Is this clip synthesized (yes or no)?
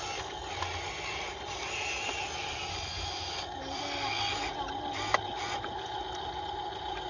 no